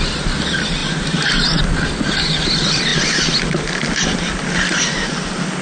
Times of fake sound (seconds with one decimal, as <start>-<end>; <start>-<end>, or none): 0.8-1.6